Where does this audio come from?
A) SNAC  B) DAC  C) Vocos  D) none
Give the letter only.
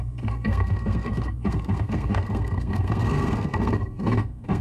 A